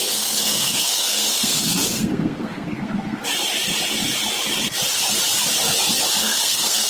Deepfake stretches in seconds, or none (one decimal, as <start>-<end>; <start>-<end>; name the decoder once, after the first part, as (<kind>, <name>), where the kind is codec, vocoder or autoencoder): 0.0-3.2 (codec, SNAC); 6.2-6.9

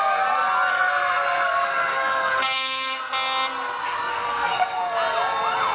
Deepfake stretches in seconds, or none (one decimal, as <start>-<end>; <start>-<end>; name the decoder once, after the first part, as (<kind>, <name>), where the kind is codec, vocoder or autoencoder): 0.7-3.0 (codec, SNAC); 4.1-4.9